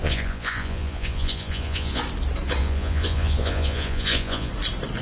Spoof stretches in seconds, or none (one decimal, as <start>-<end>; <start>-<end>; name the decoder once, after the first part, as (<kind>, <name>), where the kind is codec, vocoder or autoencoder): 0.0-2.0 (vocoder, Vocos); 2.6-4.5